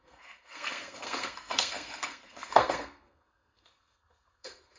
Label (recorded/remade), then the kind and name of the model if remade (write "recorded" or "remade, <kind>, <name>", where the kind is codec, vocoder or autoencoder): remade, codec, SNAC